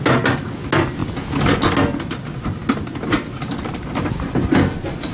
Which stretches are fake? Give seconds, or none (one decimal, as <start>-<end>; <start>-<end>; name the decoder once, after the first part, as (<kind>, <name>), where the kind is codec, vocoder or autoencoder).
none